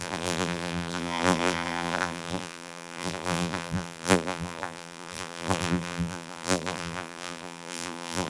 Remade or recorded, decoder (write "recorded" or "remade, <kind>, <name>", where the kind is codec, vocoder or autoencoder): remade, vocoder, BigVGAN v2